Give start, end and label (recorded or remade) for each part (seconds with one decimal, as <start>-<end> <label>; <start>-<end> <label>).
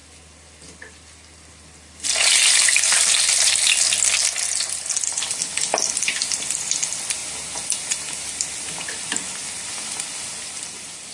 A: 0.0-11.1 recorded